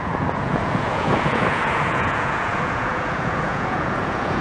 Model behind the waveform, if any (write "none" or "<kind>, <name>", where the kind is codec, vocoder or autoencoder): vocoder, Vocos